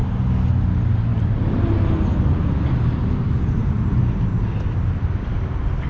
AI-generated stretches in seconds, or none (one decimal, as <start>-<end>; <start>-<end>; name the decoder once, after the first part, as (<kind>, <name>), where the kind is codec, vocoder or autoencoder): none